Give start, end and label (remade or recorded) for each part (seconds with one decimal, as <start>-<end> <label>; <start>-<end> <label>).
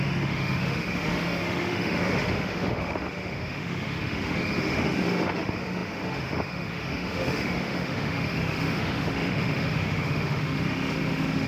0.0-11.5 remade